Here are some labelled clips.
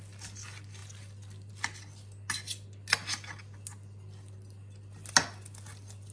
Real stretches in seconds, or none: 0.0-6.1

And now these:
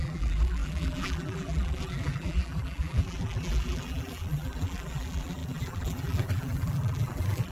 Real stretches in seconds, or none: none

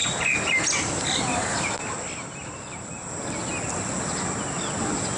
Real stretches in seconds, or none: 0.0-5.2

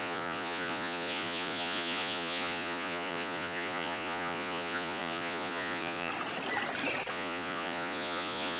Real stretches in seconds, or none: 6.1-7.1